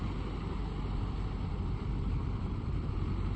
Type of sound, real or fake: real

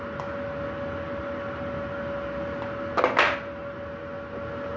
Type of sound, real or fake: real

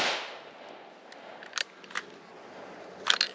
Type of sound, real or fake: real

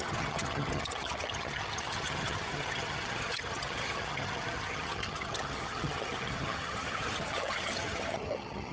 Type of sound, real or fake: fake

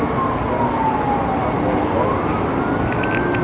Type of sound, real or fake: real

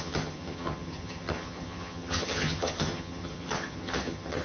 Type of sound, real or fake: fake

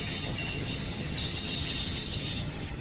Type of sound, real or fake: fake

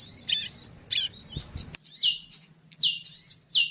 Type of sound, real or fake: real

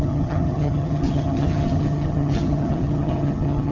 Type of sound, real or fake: fake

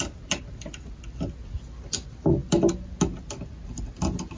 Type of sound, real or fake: real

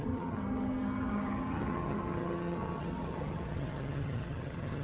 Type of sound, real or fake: fake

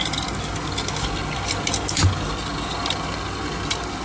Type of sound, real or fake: real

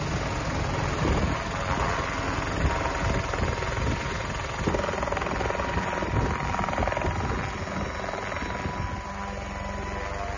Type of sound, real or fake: real